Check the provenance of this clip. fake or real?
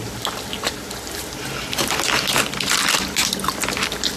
real